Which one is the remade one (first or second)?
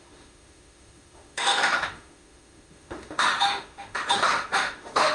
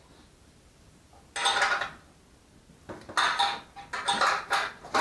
first